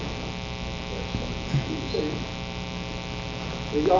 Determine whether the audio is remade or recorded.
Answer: recorded